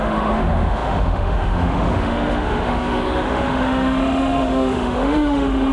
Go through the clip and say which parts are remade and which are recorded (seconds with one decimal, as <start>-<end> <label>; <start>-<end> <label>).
0.0-5.7 remade